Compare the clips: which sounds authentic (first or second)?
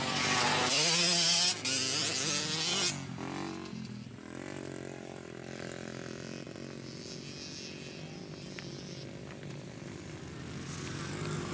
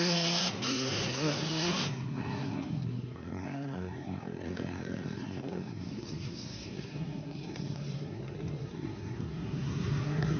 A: first